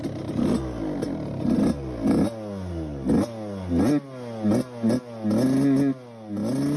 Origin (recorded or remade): recorded